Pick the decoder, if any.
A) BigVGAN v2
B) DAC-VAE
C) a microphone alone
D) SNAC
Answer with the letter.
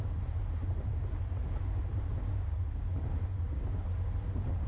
C